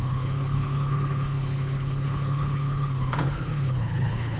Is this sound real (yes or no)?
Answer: no